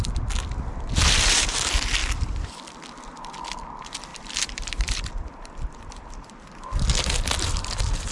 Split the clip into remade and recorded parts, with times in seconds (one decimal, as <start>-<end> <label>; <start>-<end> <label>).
0.0-4.1 recorded; 4.1-5.1 remade; 5.1-8.1 recorded

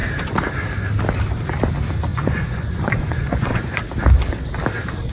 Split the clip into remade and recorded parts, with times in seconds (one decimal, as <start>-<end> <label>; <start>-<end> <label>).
0.0-2.1 recorded; 2.1-3.8 remade; 3.8-5.1 recorded

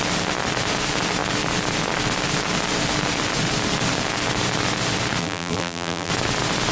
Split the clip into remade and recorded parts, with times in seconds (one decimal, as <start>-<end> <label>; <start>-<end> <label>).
0.0-5.2 recorded; 5.2-6.1 remade; 6.1-6.7 recorded

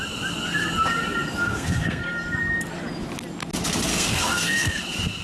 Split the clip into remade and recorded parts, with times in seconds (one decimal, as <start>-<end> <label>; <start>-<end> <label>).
0.0-1.4 recorded; 1.4-2.0 remade; 2.0-3.9 recorded; 3.9-4.8 remade; 4.8-5.2 recorded